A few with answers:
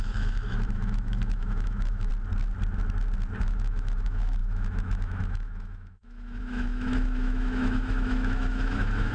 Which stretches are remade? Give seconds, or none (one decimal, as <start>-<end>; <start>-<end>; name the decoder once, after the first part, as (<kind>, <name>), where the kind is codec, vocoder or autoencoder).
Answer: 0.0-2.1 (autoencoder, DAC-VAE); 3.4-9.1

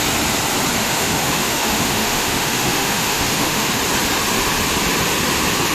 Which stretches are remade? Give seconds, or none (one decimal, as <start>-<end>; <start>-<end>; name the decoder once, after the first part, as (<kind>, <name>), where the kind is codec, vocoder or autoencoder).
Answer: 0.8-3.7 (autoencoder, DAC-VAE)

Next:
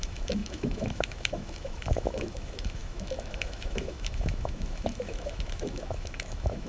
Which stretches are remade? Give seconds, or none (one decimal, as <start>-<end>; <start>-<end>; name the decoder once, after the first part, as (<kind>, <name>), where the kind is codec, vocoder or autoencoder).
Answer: 0.0-6.7 (autoencoder, DAC-VAE)

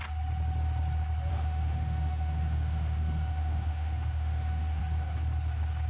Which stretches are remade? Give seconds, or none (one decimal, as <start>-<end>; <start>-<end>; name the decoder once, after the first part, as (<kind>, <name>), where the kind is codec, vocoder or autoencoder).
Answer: 1.3-4.8 (autoencoder, DAC-VAE)